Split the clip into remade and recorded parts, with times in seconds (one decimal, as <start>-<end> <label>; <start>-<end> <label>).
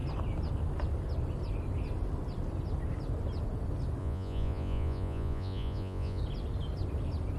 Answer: 0.0-4.0 recorded; 4.0-6.2 remade; 6.2-7.4 recorded